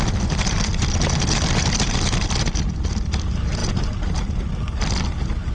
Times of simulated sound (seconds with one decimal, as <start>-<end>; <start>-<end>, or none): none